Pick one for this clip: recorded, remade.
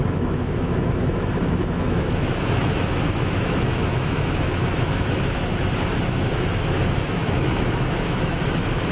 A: remade